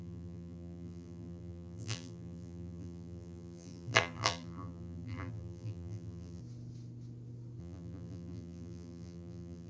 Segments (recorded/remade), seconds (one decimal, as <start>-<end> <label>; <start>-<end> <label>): 0.0-6.4 remade; 6.4-7.6 recorded; 7.6-9.7 remade